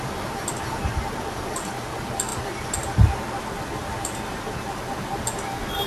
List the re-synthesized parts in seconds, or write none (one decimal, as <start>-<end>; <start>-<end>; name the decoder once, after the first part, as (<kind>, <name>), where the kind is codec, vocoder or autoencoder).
none